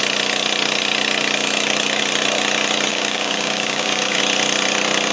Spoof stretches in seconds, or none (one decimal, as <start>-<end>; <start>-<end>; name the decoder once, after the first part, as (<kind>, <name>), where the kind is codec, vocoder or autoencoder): 2.9-4.2 (codec, DAC)